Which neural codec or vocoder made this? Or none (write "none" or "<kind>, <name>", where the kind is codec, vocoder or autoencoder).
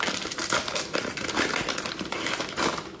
none